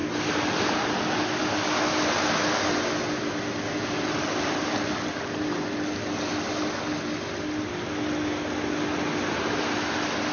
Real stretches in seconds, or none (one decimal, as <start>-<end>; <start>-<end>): 0.0-10.3